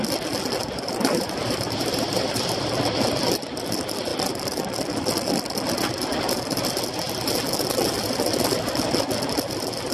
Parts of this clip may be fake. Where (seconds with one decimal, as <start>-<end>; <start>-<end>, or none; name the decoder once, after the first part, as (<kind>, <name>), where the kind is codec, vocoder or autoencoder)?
0.6-2.7 (vocoder, BigVGAN v2)